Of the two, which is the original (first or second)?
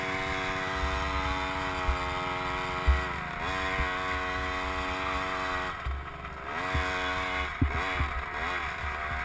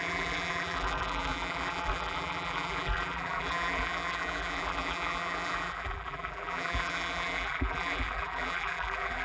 first